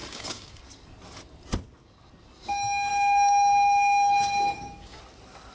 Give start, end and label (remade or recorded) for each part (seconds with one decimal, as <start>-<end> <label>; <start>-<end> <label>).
0.0-0.6 remade; 0.6-2.9 recorded; 2.9-5.0 remade; 5.0-5.5 recorded